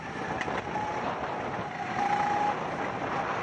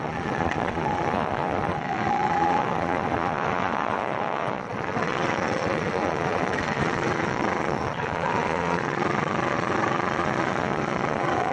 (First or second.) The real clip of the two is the first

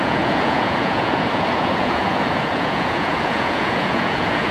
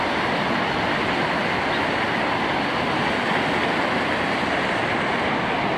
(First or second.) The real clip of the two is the second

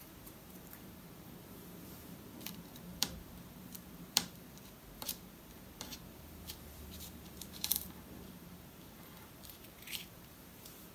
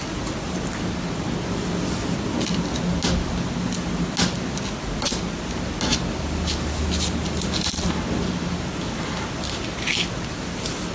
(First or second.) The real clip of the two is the second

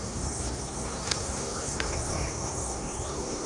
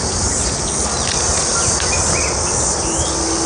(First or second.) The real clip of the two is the second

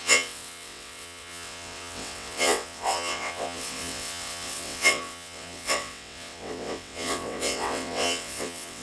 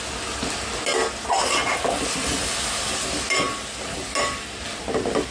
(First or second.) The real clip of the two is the second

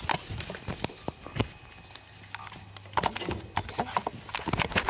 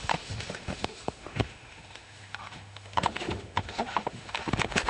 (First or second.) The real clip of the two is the first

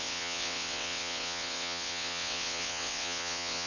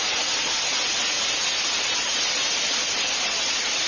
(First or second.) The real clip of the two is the second